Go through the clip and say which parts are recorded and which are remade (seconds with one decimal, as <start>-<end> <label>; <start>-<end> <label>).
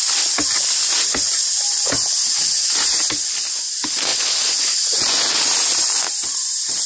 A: 0.0-4.1 recorded; 4.1-5.2 remade; 5.2-6.9 recorded